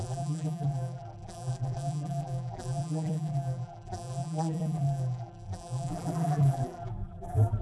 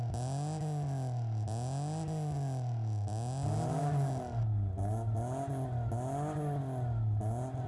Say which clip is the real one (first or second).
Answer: second